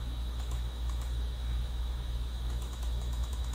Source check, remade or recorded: remade